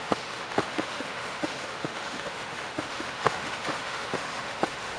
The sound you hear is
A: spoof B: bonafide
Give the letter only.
A